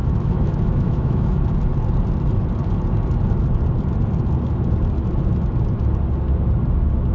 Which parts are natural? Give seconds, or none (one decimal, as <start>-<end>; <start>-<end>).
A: 1.4-7.1

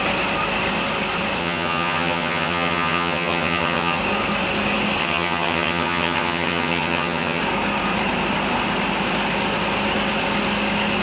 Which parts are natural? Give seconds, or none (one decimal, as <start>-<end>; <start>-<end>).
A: 0.0-1.4; 4.0-5.0; 7.4-11.0

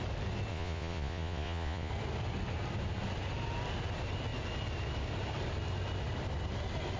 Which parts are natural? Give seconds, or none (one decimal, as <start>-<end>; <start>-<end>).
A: 0.0-0.5; 1.9-7.0